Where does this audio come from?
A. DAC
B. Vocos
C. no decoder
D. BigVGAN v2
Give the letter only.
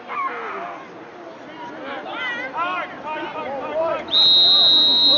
C